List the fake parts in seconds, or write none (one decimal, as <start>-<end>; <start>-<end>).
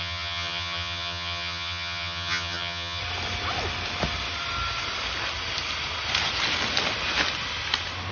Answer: 0.0-3.0